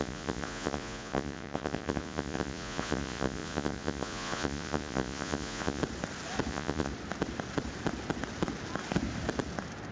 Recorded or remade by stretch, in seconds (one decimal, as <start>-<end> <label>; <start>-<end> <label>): 0.0-5.8 remade; 5.8-6.5 recorded; 6.5-6.9 remade; 6.9-9.9 recorded